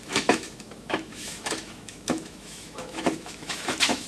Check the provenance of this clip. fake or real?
fake